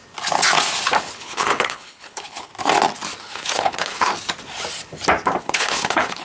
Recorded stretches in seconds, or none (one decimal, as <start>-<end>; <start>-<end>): 0.0-1.0; 2.5-3.2; 4.1-5.4